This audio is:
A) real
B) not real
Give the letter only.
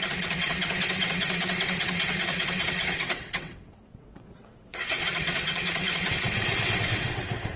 B